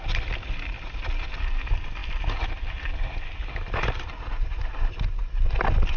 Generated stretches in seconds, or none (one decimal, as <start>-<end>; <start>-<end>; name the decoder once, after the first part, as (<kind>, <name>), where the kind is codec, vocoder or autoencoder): none